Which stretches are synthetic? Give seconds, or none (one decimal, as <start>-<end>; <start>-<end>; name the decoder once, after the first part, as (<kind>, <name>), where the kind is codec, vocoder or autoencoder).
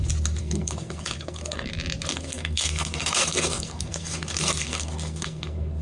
0.4-1.7 (codec, SNAC); 2.1-5.8